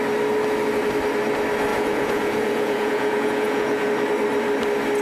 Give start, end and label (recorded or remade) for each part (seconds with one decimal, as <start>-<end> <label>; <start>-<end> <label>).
0.0-1.7 recorded; 1.7-3.9 remade; 3.9-5.0 recorded